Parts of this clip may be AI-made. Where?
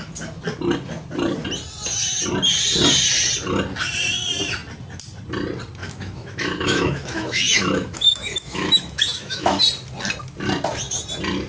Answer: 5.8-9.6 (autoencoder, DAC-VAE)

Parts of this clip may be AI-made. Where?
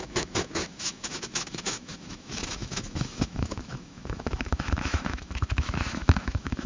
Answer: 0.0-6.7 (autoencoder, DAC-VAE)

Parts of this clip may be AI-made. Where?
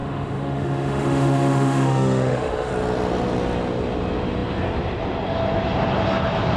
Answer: 0.0-2.7 (autoencoder, DAC-VAE)